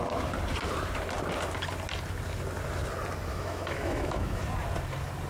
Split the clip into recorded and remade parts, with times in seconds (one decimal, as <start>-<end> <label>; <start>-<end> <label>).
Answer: 0.0-3.3 recorded; 3.3-4.4 remade; 4.4-5.3 recorded

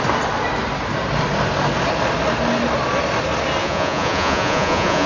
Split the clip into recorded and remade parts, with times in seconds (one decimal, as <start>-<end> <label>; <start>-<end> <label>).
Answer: 0.0-3.6 recorded; 3.6-5.1 remade

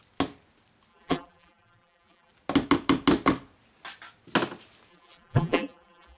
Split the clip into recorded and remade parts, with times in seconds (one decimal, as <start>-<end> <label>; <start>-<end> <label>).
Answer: 0.0-0.9 recorded; 0.9-2.3 remade; 2.3-4.9 recorded; 4.9-6.2 remade

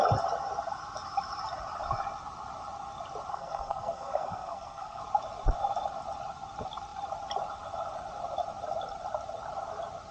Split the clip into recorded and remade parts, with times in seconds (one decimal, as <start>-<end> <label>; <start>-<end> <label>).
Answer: 0.0-3.3 recorded; 3.3-5.0 remade; 5.0-10.1 recorded

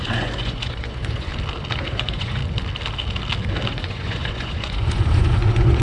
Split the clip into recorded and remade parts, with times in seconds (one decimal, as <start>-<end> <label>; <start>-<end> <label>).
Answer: 0.0-1.3 remade; 1.3-1.9 recorded; 1.9-2.4 remade; 2.4-3.7 recorded; 3.7-5.8 remade